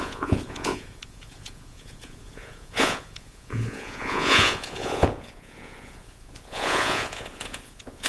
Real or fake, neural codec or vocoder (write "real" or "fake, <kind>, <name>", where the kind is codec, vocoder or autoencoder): fake, vocoder, Vocos